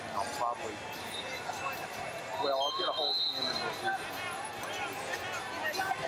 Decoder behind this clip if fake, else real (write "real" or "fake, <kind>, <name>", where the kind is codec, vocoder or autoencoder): real